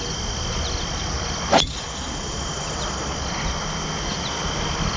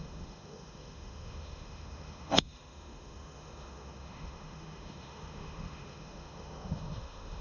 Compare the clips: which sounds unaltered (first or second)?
first